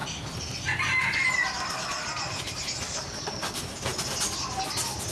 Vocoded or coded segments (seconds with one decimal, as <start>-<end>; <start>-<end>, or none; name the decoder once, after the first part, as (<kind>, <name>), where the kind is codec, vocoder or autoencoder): none